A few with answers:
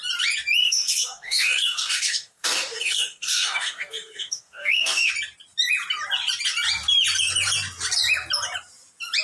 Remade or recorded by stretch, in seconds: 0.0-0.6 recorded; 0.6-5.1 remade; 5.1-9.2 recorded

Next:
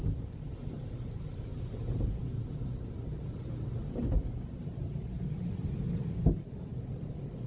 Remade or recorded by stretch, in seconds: 0.0-7.5 recorded

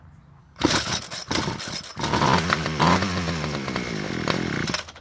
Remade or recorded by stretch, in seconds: 0.0-0.4 recorded; 0.4-1.0 remade; 1.0-5.0 recorded

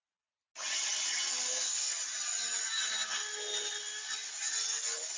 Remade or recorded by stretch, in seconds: 0.0-5.2 recorded

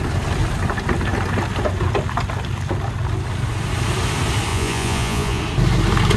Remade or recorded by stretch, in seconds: 0.0-4.5 recorded; 4.5-5.4 remade; 5.4-6.2 recorded

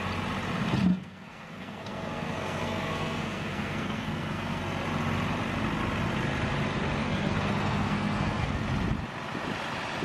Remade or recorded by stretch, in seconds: 0.0-0.9 recorded; 0.9-4.6 remade; 4.6-7.0 recorded; 7.0-8.6 remade; 8.6-10.0 recorded